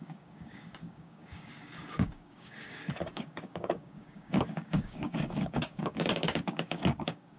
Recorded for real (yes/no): no